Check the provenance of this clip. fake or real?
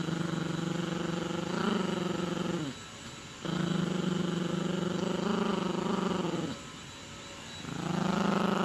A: real